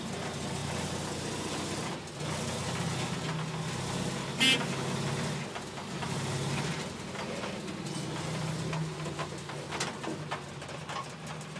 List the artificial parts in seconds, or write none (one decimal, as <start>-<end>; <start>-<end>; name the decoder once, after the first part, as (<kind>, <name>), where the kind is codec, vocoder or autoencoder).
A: none